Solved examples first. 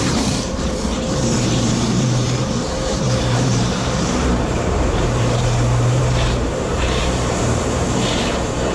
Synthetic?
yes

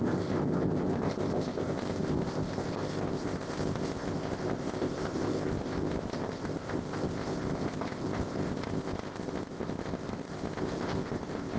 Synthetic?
yes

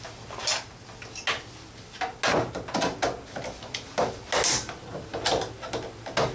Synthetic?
no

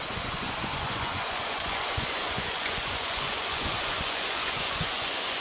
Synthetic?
yes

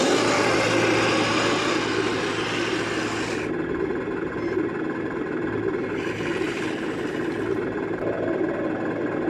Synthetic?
no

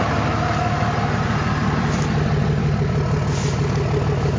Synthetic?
no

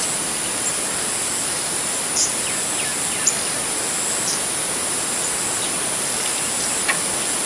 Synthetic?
no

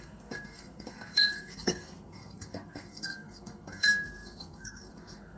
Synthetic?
yes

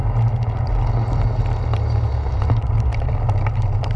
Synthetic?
no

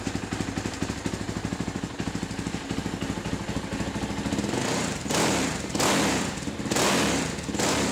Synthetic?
yes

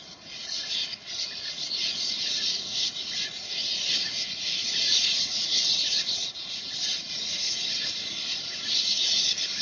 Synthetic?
yes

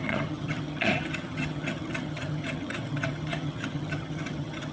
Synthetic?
yes